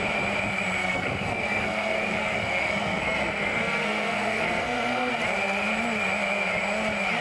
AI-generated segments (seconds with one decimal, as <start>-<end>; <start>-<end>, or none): 0.8-5.1